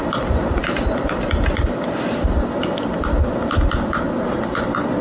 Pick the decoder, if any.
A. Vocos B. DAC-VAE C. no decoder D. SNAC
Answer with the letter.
C